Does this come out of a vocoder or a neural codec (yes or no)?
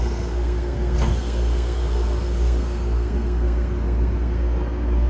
yes